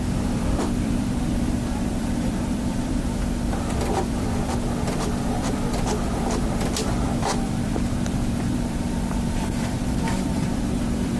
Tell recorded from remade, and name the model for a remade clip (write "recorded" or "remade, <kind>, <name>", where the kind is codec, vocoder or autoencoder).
remade, vocoder, BigVGAN v2